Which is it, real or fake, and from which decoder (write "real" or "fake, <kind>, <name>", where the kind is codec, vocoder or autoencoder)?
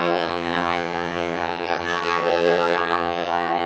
fake, vocoder, HiFi-GAN